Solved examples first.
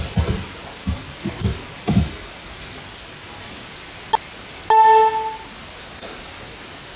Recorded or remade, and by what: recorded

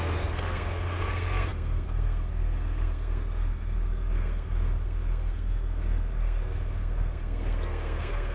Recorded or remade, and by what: remade, codec, SNAC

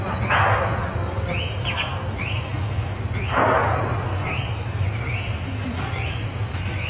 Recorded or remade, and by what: recorded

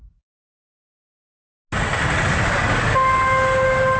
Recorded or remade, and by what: recorded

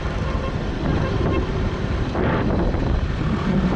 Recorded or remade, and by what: remade, vocoder, BigVGAN v2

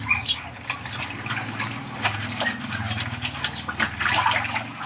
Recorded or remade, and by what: recorded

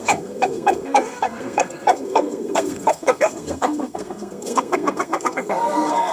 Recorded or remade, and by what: remade, codec, SNAC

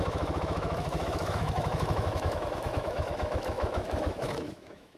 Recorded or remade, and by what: remade, autoencoder, DAC-VAE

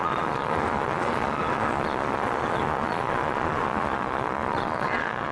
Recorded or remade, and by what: remade, vocoder, Vocos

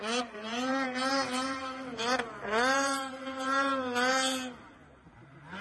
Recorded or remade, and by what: remade, vocoder, BigVGAN v2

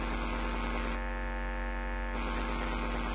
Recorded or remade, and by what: recorded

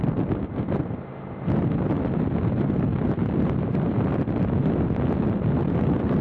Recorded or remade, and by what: recorded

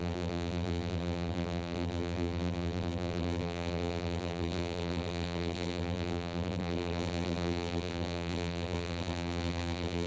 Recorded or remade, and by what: remade, vocoder, BigVGAN v2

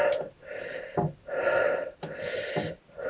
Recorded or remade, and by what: recorded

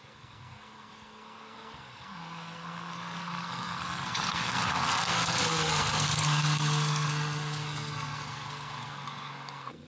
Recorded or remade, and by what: remade, codec, SNAC